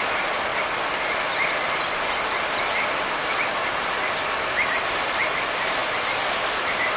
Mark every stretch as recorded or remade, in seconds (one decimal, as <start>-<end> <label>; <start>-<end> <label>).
0.0-0.5 remade; 0.5-4.4 recorded; 4.4-5.8 remade; 5.8-6.3 recorded; 6.3-7.0 remade